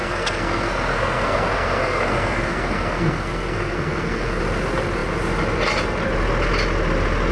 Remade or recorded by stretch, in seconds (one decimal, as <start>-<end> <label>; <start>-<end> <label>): 0.0-4.4 remade; 4.4-7.3 recorded